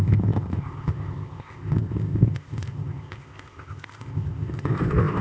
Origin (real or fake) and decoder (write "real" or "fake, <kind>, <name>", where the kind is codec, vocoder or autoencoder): fake, codec, ZipCodec